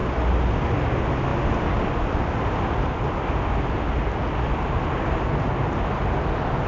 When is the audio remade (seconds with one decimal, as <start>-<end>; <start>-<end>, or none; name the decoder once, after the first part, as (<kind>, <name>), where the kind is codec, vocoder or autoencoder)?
none